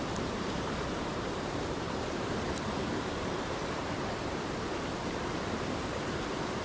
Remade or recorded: remade